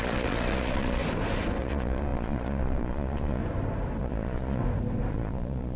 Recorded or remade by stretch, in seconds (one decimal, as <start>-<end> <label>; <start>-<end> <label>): 0.0-1.0 remade; 1.0-1.6 recorded; 1.6-3.4 remade; 3.4-4.0 recorded; 4.0-4.6 remade; 4.6-5.1 recorded; 5.1-5.8 remade